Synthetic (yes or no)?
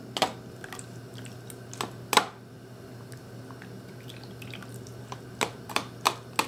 no